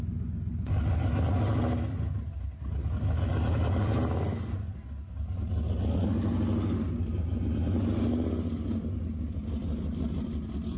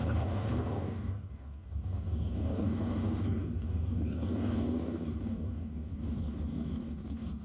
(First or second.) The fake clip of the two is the second